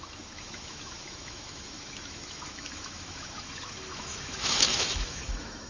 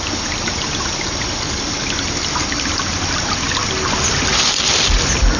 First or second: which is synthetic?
first